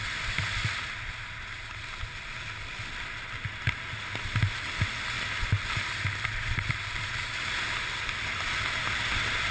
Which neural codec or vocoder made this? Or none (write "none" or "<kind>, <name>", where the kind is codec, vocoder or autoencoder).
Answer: none